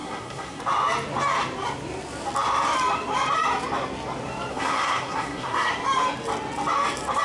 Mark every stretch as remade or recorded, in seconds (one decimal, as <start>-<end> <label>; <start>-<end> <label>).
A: 0.0-0.6 remade; 0.6-4.5 recorded; 4.5-5.7 remade; 5.7-7.2 recorded